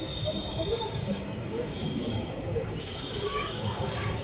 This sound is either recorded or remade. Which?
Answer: remade